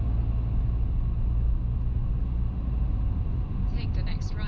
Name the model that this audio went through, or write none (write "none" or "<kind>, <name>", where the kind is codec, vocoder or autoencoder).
none